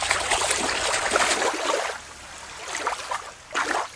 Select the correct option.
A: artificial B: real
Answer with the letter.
B